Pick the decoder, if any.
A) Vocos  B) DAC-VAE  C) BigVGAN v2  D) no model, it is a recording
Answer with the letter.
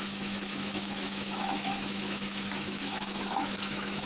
B